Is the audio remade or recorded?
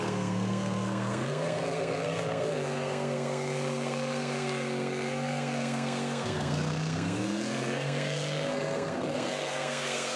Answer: remade